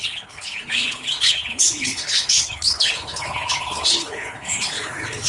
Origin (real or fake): fake